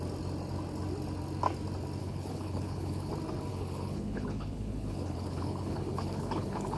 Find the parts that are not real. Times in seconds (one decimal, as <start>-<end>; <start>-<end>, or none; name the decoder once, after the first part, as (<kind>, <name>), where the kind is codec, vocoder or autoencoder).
2.0-3.1 (codec, HILCodec); 3.5-6.8